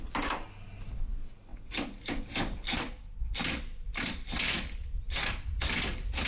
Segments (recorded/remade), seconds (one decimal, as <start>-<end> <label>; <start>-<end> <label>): 0.0-6.3 recorded